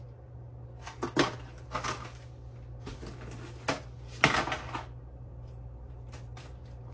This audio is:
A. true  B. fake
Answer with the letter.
A